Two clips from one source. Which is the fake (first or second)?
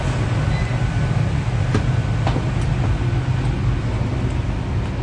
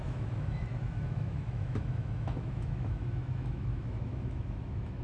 second